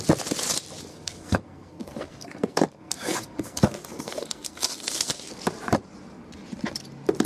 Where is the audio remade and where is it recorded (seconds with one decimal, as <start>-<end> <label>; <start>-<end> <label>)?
0.0-0.9 recorded; 0.9-5.3 remade; 5.3-7.3 recorded